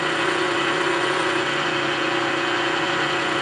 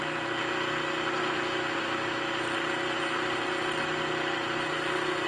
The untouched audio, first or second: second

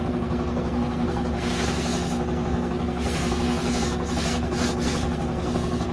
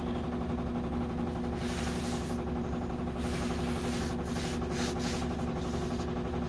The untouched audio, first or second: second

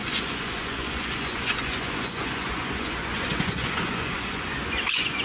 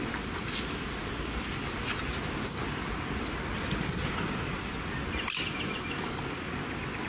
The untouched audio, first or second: second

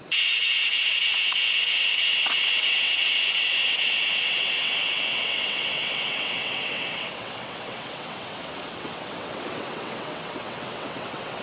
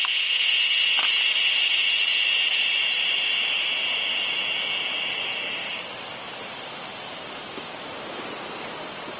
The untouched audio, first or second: second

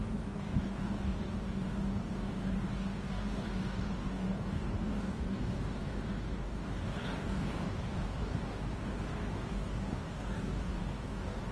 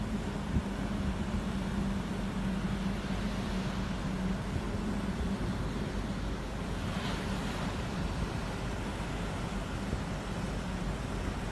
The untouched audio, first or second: second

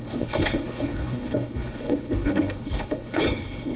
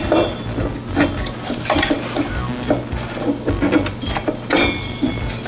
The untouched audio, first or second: second